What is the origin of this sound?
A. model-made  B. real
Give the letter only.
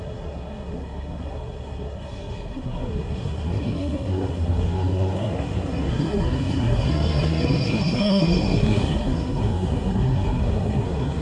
A